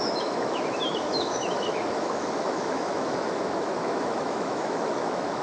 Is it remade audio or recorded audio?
remade